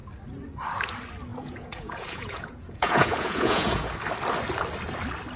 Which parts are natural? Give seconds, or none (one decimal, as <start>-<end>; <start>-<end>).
0.0-1.3; 3.9-5.4